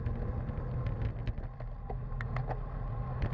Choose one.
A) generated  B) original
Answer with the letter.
B